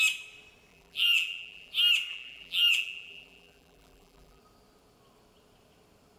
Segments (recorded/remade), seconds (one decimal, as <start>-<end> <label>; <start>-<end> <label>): 0.0-0.7 recorded; 0.7-1.7 remade; 1.7-2.1 recorded; 2.1-4.4 remade; 4.4-6.2 recorded